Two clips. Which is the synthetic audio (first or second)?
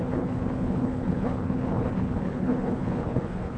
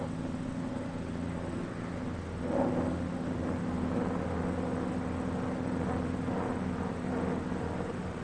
first